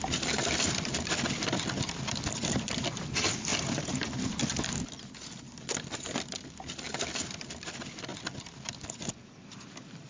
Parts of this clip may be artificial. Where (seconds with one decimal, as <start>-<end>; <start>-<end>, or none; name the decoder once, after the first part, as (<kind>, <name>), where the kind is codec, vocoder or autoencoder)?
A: none